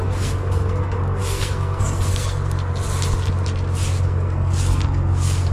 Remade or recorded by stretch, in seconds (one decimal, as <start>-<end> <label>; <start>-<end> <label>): 0.0-2.7 remade; 2.7-4.0 recorded; 4.0-5.5 remade